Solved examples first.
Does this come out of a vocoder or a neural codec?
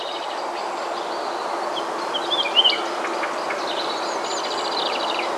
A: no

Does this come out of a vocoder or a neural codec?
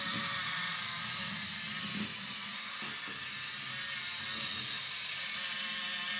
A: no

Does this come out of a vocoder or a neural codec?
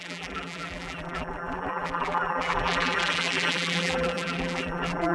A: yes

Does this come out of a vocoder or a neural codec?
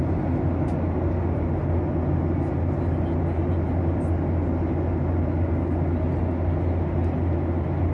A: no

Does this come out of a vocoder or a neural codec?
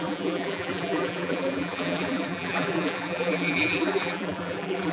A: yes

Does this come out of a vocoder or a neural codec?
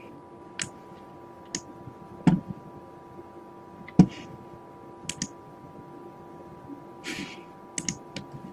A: no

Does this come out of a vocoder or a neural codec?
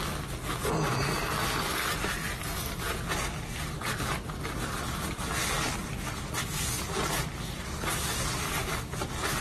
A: no